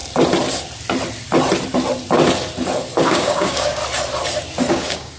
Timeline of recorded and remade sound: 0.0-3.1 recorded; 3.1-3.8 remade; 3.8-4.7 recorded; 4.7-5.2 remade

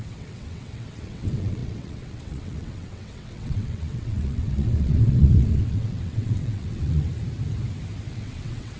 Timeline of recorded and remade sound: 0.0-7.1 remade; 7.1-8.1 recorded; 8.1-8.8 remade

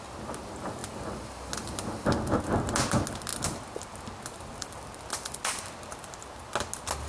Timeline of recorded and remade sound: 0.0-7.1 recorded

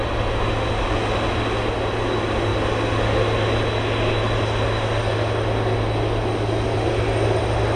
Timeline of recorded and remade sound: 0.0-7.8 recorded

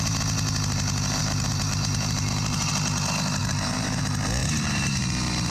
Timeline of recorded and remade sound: 0.0-1.2 recorded; 1.2-2.7 remade; 2.7-3.4 recorded; 3.4-4.0 remade; 4.0-4.4 recorded; 4.4-5.0 remade; 5.0-5.5 recorded

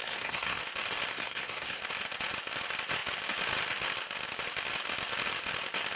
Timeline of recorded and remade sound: 0.0-0.6 remade; 0.6-1.1 recorded; 1.1-1.8 remade; 1.8-6.0 recorded

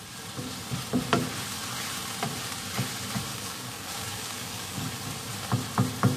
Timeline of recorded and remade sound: 0.0-3.3 recorded; 3.3-4.9 remade; 4.9-6.2 recorded

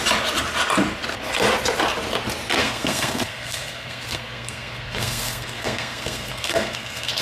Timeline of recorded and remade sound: 0.0-2.6 recorded; 2.6-7.2 remade